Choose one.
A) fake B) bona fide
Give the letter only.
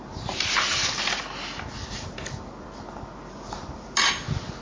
B